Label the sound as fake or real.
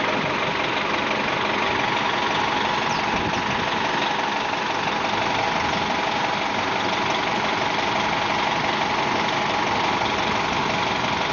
real